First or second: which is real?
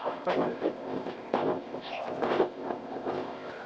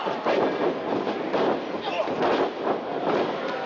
second